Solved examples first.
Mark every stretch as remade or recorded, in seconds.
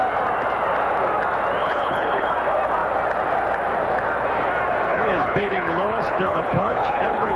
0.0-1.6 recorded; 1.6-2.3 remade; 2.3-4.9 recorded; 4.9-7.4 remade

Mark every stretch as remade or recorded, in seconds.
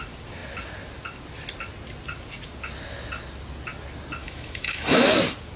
0.0-4.2 recorded; 4.2-5.1 remade; 5.1-5.6 recorded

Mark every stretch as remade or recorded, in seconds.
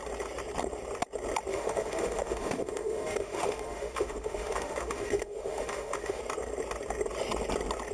0.0-1.5 recorded; 1.5-6.2 remade; 6.2-7.9 recorded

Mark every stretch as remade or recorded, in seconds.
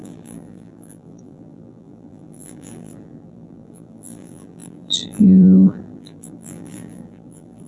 0.0-7.7 remade